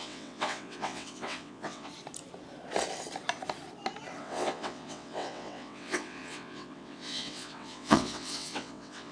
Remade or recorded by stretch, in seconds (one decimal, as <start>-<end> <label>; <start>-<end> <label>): 0.0-1.9 remade; 1.9-4.2 recorded; 4.2-9.1 remade